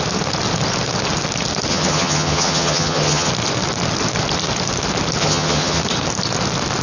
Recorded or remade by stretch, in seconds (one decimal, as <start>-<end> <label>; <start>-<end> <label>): 0.0-1.7 recorded; 1.7-3.3 remade; 3.3-5.2 recorded; 5.2-5.8 remade; 5.8-6.8 recorded